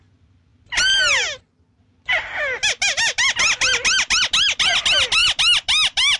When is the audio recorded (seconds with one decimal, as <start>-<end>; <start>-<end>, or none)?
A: 0.0-6.2